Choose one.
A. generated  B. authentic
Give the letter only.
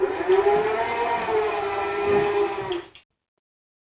B